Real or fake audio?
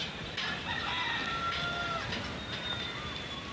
real